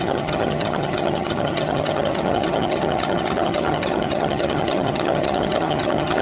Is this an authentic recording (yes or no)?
no